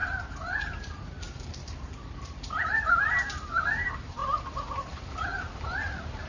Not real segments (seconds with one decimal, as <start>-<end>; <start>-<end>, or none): 0.0-4.2; 4.8-6.3